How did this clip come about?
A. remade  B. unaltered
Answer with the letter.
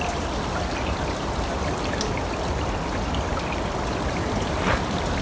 B